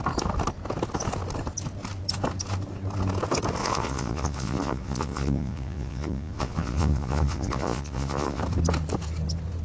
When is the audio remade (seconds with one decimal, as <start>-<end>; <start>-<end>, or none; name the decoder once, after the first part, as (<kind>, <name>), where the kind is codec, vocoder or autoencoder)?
3.6-8.4 (vocoder, Vocos)